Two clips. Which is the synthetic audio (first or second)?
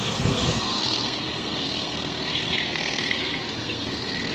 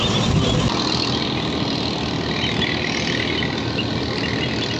first